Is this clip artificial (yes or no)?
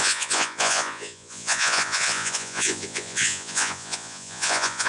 yes